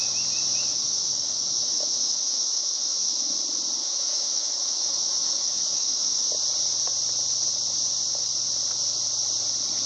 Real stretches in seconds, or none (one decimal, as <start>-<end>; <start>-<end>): 0.0-0.7; 3.3-3.8; 6.3-9.9